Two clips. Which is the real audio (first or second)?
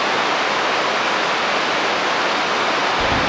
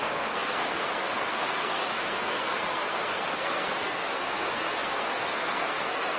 first